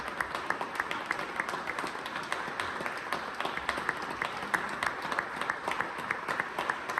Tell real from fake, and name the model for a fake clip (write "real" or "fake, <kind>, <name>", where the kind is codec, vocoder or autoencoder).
real